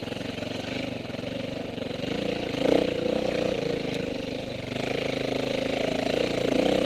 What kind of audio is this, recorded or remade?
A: recorded